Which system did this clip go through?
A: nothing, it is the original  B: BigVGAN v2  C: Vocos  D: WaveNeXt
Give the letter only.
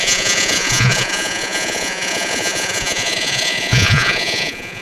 C